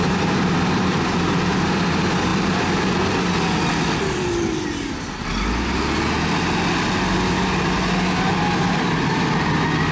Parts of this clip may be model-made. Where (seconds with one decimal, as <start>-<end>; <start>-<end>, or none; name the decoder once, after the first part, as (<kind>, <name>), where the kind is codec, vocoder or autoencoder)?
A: 2.3-3.0 (vocoder, BigVGAN v2)